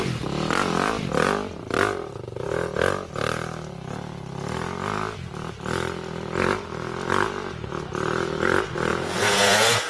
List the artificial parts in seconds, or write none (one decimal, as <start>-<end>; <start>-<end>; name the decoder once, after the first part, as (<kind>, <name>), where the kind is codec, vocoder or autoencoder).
8.9-9.9 (vocoder, Vocos)